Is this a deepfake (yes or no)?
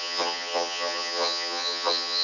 yes